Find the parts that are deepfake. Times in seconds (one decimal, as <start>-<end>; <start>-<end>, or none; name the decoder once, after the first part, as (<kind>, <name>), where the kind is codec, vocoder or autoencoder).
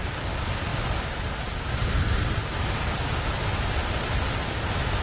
none